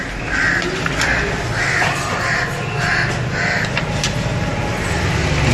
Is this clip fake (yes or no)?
no